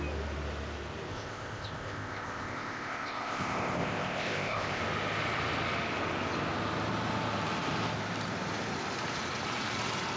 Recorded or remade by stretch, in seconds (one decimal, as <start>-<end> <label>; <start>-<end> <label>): 0.0-1.1 recorded; 1.1-4.8 remade; 4.8-10.2 recorded